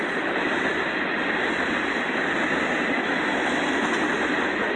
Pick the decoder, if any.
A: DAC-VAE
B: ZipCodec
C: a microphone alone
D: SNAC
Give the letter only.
C